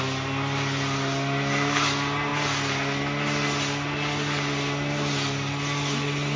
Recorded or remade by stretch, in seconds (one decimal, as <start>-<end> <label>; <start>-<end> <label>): 0.0-6.4 recorded